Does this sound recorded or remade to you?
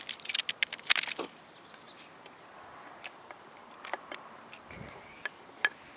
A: recorded